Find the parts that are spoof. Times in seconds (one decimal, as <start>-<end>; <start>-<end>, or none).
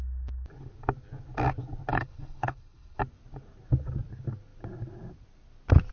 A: 1.9-3.0